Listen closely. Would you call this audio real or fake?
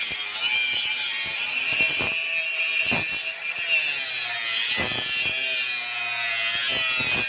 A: real